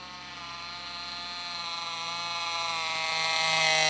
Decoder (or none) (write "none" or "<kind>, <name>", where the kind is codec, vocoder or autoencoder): none